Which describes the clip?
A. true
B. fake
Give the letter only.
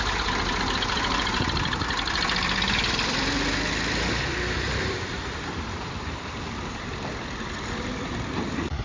B